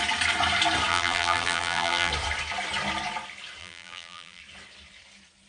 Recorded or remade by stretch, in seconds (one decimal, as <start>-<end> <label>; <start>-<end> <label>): 0.0-0.9 recorded; 0.9-2.1 remade; 2.1-3.6 recorded; 3.6-4.4 remade; 4.4-5.5 recorded